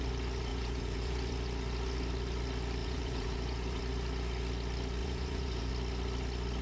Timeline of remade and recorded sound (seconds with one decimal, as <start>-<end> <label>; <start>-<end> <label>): 0.0-0.5 recorded; 0.5-1.3 remade; 1.3-2.8 recorded; 2.8-3.8 remade; 3.8-5.0 recorded; 5.0-5.7 remade; 5.7-6.6 recorded